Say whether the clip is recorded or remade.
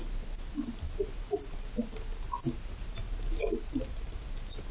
recorded